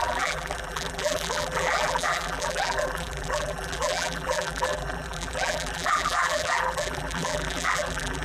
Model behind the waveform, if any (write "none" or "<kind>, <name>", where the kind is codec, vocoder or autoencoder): vocoder, BigVGAN v2